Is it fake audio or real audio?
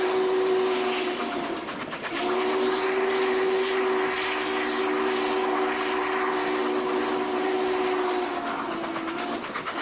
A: real